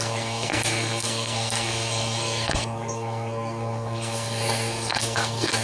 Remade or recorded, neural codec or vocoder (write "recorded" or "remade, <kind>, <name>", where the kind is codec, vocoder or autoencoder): remade, codec, SNAC